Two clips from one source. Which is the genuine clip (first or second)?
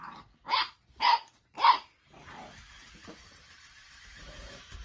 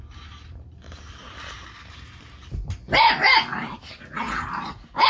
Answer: first